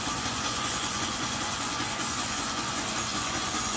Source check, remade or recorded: remade